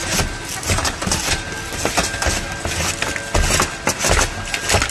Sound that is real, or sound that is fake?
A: real